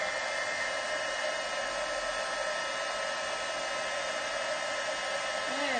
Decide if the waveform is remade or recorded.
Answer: recorded